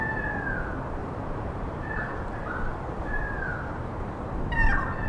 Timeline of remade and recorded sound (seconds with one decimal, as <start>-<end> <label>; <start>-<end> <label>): 0.0-1.0 recorded; 1.0-1.9 remade; 1.9-2.4 recorded; 2.4-2.9 remade; 2.9-3.5 recorded; 3.5-4.0 remade; 4.0-5.1 recorded